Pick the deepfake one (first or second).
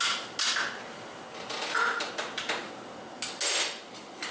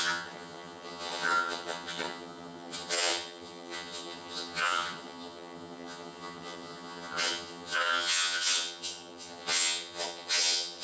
second